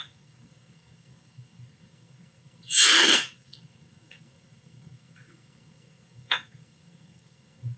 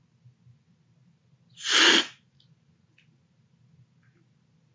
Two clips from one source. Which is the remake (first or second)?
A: first